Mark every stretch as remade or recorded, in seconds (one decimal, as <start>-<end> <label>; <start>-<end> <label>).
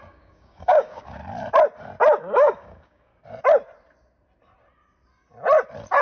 0.0-1.2 remade; 1.2-2.2 recorded; 2.2-3.1 remade; 3.1-6.0 recorded